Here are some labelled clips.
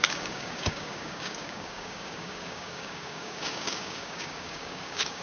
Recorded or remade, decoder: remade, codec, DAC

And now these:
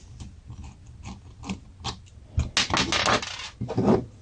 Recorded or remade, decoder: recorded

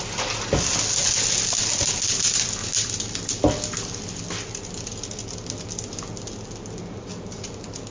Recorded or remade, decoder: recorded